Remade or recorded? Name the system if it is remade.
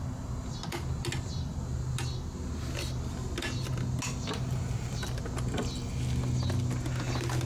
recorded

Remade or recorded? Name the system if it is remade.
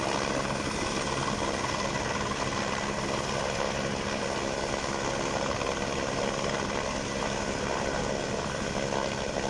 recorded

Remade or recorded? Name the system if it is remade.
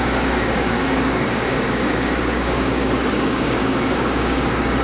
remade, codec, DAC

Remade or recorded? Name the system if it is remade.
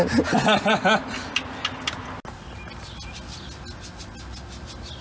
recorded